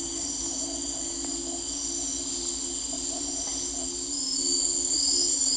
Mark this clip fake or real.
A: real